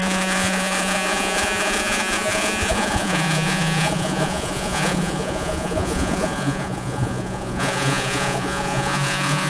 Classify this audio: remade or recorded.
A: remade